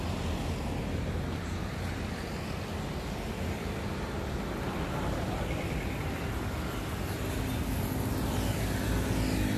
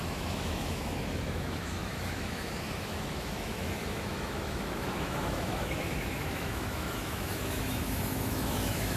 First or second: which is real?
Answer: first